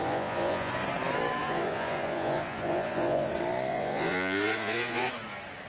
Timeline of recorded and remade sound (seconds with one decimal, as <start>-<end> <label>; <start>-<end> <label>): 0.0-0.7 remade; 0.7-1.4 recorded; 1.4-3.3 remade; 3.3-3.7 recorded; 3.7-5.1 remade; 5.1-5.7 recorded